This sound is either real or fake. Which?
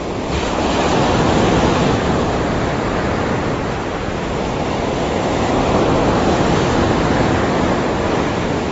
real